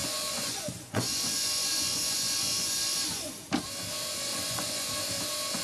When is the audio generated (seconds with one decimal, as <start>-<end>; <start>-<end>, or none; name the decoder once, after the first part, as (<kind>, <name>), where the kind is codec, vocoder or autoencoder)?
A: 0.0-3.3 (vocoder, Vocos); 4.3-4.9